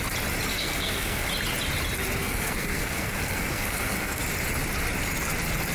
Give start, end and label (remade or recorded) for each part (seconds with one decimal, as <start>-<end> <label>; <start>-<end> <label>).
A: 0.0-0.5 recorded; 0.5-1.3 remade; 1.3-2.2 recorded; 2.2-4.2 remade; 4.2-5.7 recorded